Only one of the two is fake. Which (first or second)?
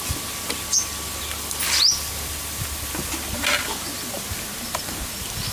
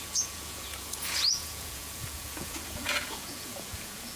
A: second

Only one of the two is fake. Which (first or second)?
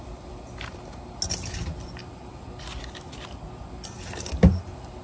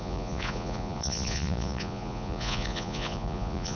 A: second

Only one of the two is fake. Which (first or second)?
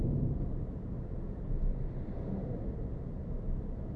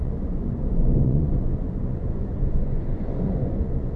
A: second